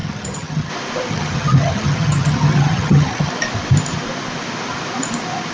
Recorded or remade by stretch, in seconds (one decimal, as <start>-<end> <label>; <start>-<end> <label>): 0.0-0.7 remade; 0.7-1.1 recorded; 1.1-3.3 remade; 3.3-5.5 recorded